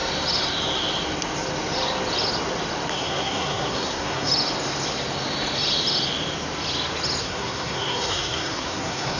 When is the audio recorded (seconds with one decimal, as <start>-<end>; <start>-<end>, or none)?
0.0-2.9; 4.3-7.2